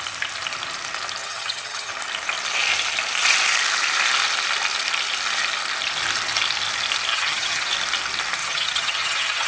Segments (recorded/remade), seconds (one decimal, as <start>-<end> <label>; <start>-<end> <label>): 0.0-1.2 recorded; 1.2-1.9 remade; 1.9-7.1 recorded; 7.1-7.7 remade; 7.7-8.4 recorded; 8.4-9.5 remade